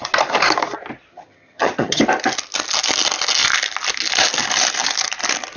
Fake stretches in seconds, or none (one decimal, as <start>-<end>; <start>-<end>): 1.1-2.0